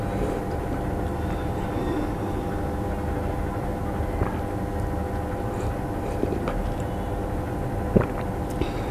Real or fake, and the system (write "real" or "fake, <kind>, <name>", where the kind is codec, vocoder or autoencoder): real